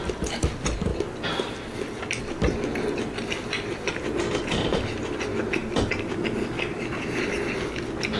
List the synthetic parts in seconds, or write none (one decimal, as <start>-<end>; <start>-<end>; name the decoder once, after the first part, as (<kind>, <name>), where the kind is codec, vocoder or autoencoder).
none